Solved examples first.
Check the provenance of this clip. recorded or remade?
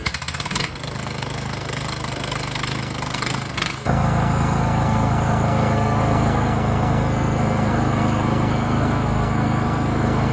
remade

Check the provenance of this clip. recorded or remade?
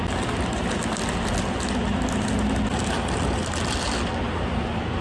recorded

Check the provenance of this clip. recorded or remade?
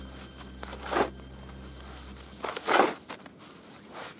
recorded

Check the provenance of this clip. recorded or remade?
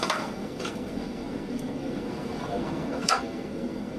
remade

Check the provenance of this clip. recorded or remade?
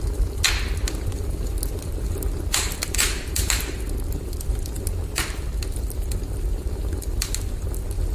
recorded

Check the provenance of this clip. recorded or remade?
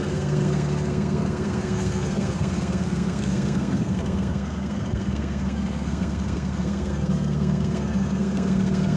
remade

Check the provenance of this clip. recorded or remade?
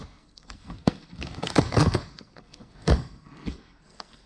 remade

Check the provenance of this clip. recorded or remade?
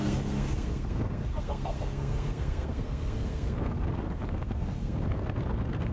remade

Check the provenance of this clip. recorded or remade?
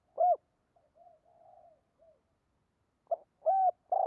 recorded